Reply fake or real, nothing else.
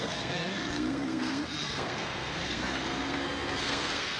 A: fake